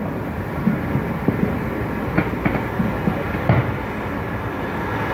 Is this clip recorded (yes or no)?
yes